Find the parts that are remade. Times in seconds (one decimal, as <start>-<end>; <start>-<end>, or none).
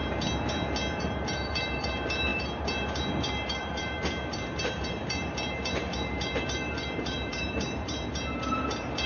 1.0-9.1